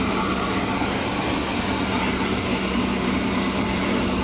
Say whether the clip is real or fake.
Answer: real